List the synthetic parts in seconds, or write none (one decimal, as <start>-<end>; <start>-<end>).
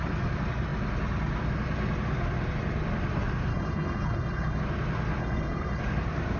3.5-4.6; 5.2-5.8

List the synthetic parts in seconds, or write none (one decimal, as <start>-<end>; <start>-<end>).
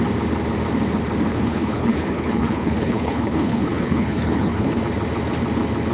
1.3-4.8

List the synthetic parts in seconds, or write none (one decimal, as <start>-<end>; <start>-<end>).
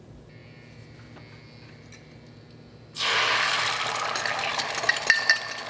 none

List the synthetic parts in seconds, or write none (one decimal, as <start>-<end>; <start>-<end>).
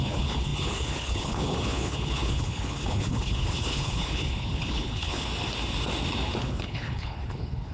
0.0-5.3; 6.4-7.7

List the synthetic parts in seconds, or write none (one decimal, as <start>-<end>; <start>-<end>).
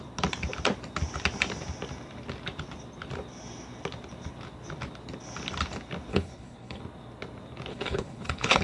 6.1-6.8; 7.7-8.6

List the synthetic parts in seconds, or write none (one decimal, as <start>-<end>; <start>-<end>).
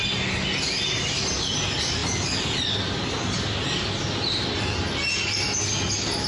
none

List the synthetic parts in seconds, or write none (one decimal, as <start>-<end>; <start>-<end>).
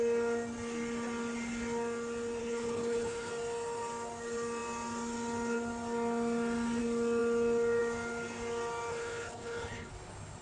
2.4-3.3; 8.9-9.9